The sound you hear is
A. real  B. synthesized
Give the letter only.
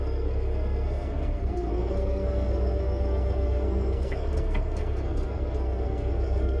B